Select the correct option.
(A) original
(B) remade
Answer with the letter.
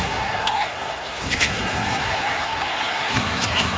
B